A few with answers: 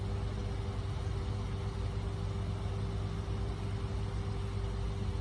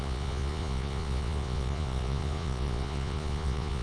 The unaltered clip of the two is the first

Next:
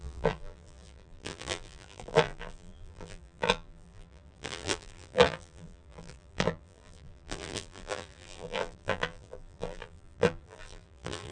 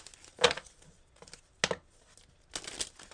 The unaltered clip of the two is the second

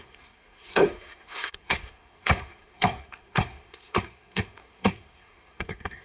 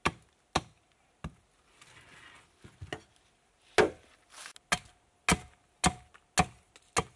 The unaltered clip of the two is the second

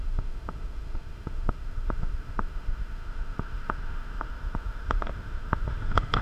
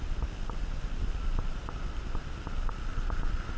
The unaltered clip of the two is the second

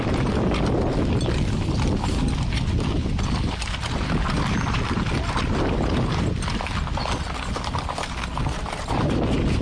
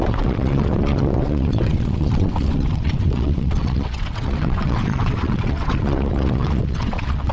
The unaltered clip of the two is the first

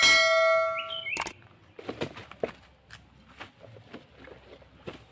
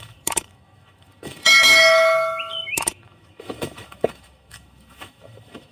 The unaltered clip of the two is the first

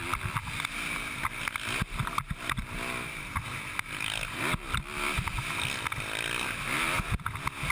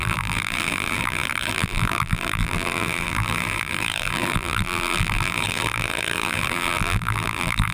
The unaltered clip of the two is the first